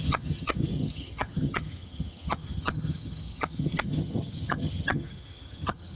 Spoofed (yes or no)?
yes